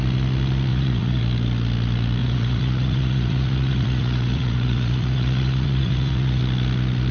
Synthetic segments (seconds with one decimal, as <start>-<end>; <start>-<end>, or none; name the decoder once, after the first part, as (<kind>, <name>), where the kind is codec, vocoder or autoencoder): 0.7-1.2 (vocoder, Vocos); 2.2-6.4